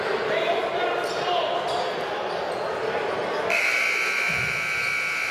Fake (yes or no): no